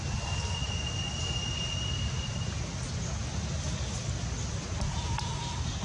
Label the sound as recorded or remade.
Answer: recorded